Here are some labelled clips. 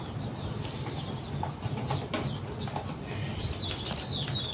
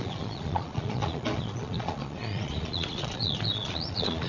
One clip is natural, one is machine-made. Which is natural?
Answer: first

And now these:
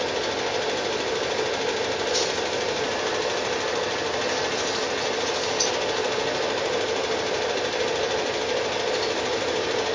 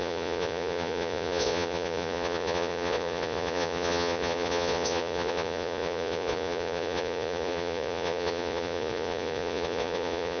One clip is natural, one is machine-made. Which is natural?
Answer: first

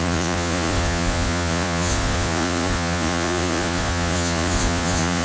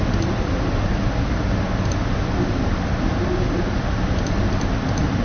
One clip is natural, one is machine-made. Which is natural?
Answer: second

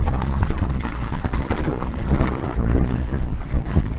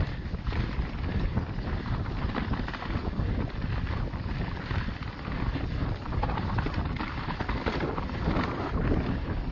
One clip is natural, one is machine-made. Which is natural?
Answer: second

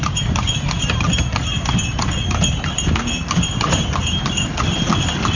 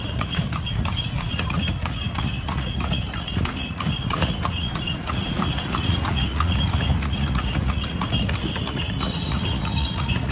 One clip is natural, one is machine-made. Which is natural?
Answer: first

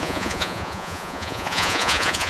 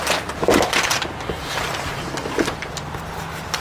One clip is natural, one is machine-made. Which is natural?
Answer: second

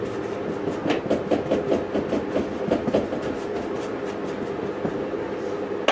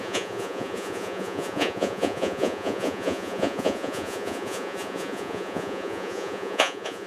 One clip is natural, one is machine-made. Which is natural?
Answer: first